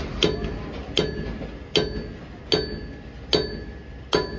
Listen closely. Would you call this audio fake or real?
real